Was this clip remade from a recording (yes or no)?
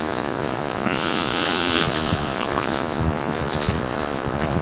yes